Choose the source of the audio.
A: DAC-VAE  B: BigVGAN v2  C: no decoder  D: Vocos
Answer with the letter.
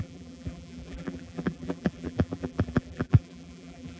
B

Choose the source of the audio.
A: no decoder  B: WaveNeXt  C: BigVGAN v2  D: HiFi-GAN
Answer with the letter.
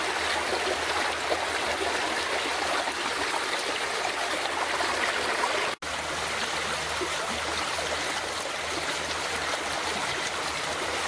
A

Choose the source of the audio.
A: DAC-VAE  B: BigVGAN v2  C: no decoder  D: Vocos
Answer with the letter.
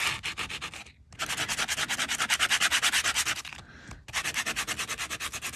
C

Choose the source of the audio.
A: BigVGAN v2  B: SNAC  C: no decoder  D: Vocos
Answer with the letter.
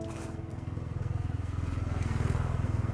B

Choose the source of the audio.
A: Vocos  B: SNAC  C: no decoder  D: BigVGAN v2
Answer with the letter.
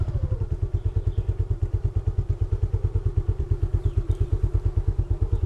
D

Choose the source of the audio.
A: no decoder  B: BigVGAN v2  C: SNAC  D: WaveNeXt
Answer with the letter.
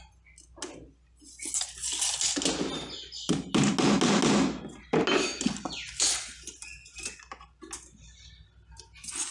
A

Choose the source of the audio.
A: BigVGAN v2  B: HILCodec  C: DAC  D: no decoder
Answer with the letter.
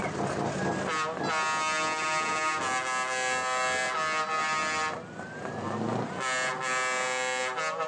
D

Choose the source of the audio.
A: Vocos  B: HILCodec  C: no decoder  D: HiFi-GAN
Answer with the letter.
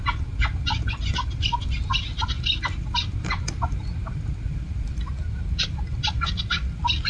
C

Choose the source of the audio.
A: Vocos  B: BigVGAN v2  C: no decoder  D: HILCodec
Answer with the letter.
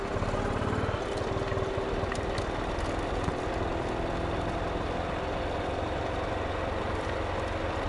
C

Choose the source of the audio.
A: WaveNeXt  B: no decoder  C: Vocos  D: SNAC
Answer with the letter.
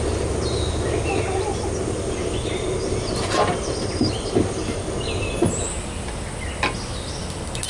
B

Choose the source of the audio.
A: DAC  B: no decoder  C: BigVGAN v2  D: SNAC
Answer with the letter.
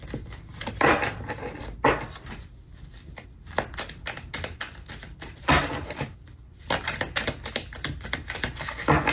B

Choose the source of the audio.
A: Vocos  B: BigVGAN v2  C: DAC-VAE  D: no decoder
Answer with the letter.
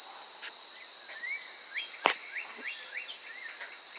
D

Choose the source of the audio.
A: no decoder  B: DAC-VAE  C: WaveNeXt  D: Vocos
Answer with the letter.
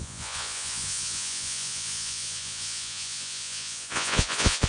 D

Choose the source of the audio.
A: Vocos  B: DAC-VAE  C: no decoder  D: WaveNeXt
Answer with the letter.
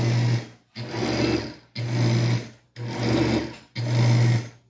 C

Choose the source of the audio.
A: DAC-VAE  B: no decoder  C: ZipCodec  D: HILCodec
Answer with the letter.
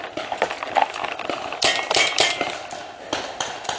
B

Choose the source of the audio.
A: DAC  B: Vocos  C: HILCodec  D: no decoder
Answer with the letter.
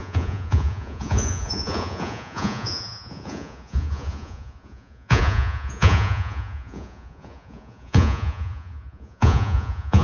B